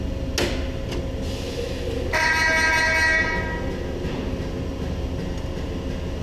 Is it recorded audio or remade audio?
recorded